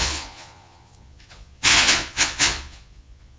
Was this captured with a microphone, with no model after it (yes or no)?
no